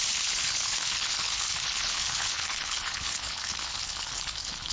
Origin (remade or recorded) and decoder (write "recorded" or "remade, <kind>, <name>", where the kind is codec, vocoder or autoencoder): remade, codec, HILCodec